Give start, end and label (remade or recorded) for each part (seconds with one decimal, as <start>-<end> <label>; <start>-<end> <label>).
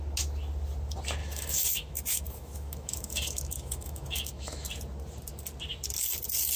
0.0-1.2 recorded; 1.2-4.7 remade; 4.7-6.6 recorded